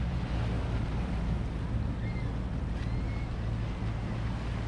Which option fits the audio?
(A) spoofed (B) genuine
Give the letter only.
B